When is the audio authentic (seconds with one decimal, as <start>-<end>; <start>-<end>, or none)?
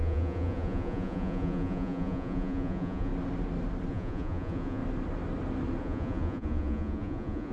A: 3.1-3.9; 4.8-5.8